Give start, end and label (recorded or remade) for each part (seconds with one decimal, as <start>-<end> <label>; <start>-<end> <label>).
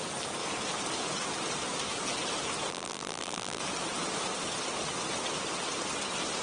0.0-2.7 recorded; 2.7-3.6 remade; 3.6-6.4 recorded